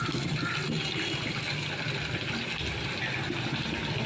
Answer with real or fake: real